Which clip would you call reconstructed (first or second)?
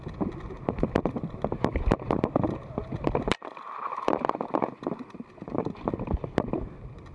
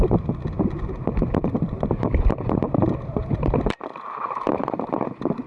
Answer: second